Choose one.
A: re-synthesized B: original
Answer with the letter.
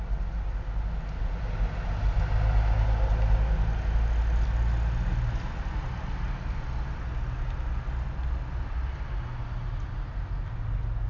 B